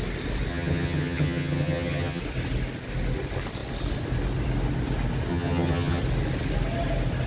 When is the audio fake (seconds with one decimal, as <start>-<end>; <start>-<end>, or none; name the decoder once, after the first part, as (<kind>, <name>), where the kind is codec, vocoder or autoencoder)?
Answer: 0.5-2.2 (vocoder, HiFi-GAN); 5.3-6.0